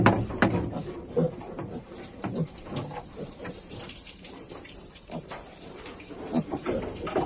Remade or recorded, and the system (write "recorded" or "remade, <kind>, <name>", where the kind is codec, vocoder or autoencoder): remade, vocoder, BigVGAN v2